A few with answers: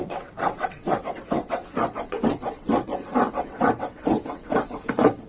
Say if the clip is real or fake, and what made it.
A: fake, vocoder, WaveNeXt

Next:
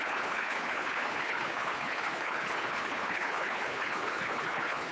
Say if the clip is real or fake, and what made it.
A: fake, codec, HILCodec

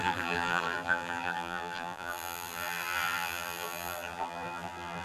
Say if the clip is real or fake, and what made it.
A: fake, vocoder, BigVGAN v2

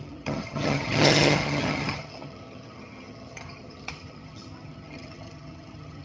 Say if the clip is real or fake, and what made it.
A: fake, vocoder, HiFi-GAN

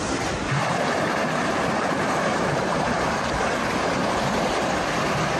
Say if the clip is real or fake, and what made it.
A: fake, vocoder, BigVGAN v2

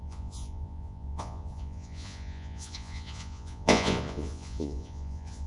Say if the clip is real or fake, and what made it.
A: fake, vocoder, Vocos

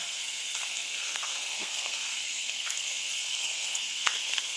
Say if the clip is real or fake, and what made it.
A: fake, codec, SNAC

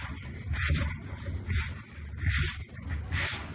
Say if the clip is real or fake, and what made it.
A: real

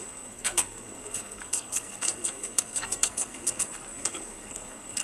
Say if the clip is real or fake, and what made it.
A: fake, codec, SNAC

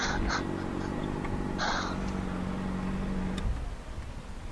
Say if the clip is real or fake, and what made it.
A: real